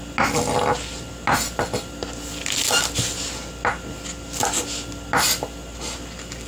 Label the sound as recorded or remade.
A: recorded